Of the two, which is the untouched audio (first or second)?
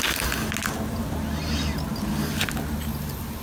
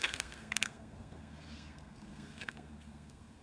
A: first